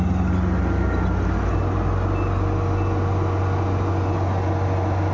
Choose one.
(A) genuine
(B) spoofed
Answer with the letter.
A